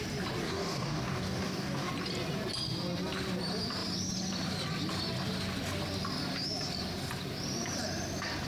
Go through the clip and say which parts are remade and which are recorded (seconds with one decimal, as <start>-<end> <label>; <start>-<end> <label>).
0.0-0.4 recorded; 0.4-1.9 remade; 1.9-8.5 recorded